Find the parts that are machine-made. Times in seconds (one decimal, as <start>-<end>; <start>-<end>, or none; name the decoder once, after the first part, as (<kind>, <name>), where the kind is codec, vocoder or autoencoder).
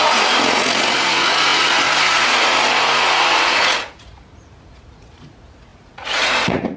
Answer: 0.0-6.8 (vocoder, Vocos)